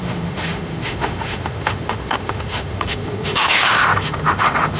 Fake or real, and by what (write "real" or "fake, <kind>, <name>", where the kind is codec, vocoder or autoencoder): fake, autoencoder, DAC-VAE